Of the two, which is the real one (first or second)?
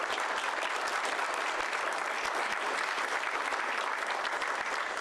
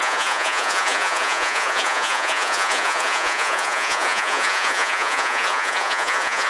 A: first